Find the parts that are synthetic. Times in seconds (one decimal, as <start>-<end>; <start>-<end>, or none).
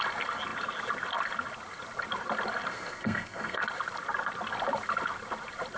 2.7-3.6